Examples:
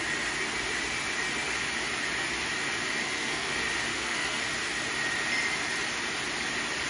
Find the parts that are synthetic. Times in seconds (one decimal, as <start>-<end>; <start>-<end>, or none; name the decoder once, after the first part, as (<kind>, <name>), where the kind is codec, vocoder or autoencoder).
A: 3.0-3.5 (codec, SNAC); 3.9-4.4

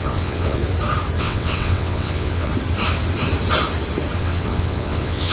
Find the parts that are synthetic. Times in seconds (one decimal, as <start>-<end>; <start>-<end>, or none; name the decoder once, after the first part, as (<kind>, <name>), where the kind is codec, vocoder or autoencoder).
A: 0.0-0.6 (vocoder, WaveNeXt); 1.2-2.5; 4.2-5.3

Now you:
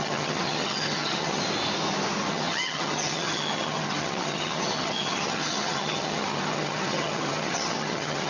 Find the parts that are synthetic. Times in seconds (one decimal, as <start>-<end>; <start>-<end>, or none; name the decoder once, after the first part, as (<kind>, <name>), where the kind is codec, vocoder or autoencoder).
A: 0.0-1.4 (vocoder, HiFi-GAN); 2.3-8.3

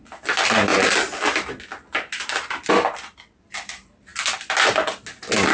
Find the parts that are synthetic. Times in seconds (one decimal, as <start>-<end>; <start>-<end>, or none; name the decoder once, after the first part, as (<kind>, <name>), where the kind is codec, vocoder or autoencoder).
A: 0.0-0.7 (vocoder, BigVGAN v2); 3.4-4.1

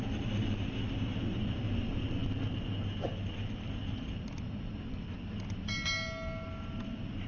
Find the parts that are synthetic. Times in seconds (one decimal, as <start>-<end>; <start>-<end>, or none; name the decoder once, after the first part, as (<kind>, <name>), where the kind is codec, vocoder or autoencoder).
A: none

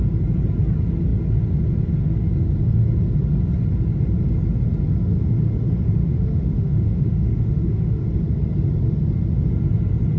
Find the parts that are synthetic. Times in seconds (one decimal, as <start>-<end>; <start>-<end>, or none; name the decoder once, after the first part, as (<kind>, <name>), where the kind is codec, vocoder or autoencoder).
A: 6.0-8.0 (autoencoder, DAC-VAE)